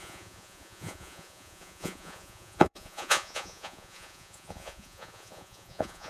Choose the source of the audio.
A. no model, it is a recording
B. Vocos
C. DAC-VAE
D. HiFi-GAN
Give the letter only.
B